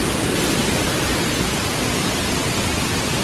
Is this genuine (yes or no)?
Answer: yes